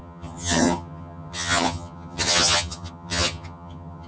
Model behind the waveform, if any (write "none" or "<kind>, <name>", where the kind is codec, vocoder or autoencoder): vocoder, HiFi-GAN